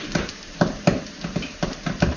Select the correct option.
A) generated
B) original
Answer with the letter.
A